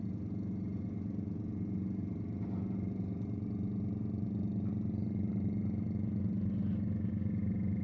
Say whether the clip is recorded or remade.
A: recorded